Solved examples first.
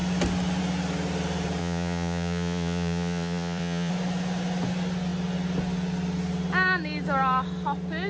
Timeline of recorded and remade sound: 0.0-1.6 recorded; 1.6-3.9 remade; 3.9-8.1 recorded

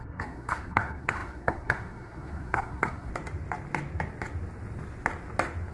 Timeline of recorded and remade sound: 0.0-3.1 remade; 3.1-5.7 recorded

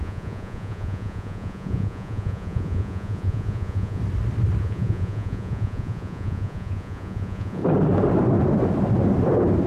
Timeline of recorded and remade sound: 0.0-4.0 remade; 4.0-4.6 recorded; 4.6-7.6 remade; 7.6-9.7 recorded

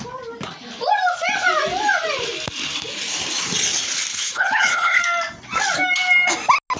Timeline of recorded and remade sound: 0.0-4.1 recorded; 4.1-5.0 remade; 5.0-6.8 recorded

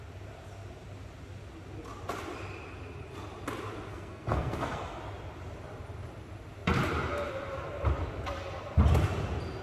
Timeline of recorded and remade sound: 0.0-3.9 recorded; 3.9-5.0 remade; 5.0-9.6 recorded

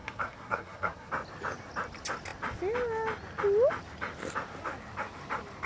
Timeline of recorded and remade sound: 0.0-1.1 remade; 1.1-5.7 recorded